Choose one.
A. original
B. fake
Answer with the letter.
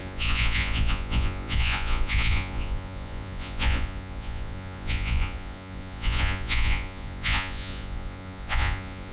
B